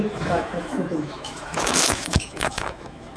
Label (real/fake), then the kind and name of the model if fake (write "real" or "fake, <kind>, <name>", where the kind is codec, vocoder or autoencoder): fake, autoencoder, DAC-VAE